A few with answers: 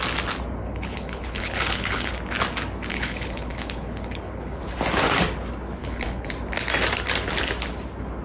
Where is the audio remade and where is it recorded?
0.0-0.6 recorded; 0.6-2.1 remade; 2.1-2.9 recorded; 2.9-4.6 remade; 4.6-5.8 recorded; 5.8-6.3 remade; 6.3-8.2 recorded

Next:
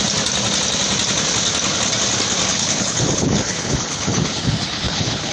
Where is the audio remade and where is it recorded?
0.0-2.5 recorded; 2.5-5.3 remade

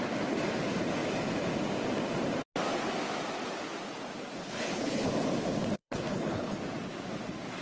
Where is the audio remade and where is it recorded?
0.0-4.4 recorded; 4.4-5.1 remade; 5.1-5.8 recorded; 5.8-6.6 remade; 6.6-7.6 recorded

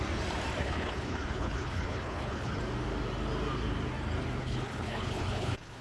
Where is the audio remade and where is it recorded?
0.0-0.6 recorded; 0.6-2.6 remade; 2.6-4.4 recorded; 4.4-5.8 remade

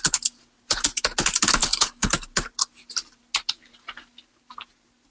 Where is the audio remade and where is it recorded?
0.0-1.6 recorded; 1.6-2.1 remade; 2.1-5.1 recorded

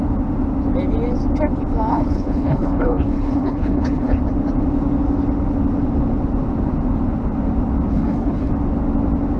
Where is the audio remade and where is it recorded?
0.0-1.9 recorded; 1.9-4.2 remade; 4.2-7.9 recorded; 7.9-8.5 remade; 8.5-9.4 recorded

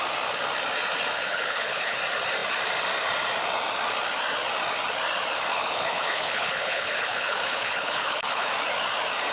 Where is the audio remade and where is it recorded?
0.0-1.3 recorded; 1.3-2.0 remade; 2.0-5.5 recorded; 5.5-8.5 remade; 8.5-9.3 recorded